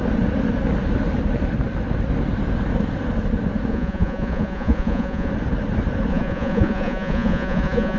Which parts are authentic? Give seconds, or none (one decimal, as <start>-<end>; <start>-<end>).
0.0-3.7; 5.3-6.1

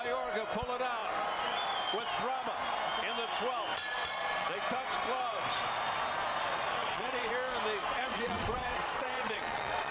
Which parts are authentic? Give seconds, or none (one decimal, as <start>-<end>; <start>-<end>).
0.0-3.7; 4.7-6.8; 7.3-7.8

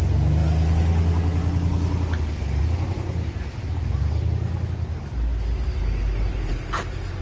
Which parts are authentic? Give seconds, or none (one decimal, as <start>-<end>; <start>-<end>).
0.0-7.2

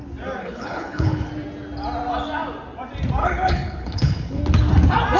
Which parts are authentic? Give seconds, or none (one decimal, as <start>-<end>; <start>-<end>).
0.0-0.4; 1.3-3.2; 4.4-5.2